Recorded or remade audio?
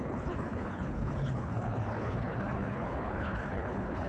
remade